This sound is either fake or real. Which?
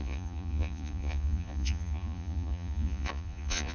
fake